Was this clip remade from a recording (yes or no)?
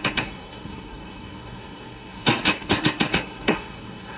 yes